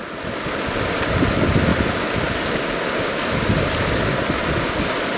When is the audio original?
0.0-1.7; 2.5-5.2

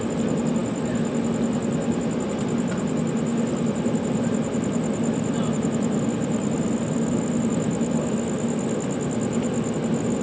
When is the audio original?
0.0-10.2

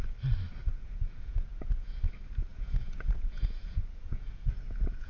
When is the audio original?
0.0-0.6; 2.0-2.5

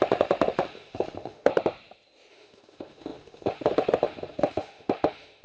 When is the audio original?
1.5-2.3